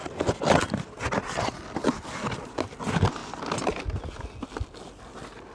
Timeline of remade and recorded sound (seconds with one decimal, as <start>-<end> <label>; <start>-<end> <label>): 0.0-5.5 recorded